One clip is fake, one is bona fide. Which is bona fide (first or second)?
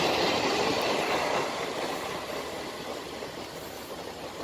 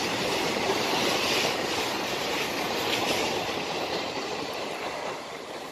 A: first